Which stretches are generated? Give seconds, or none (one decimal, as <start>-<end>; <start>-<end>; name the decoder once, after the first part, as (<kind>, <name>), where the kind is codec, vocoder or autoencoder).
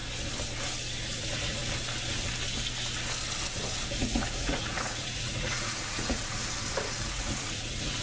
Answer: 1.2-1.6 (vocoder, Vocos); 4.0-6.4; 6.9-8.0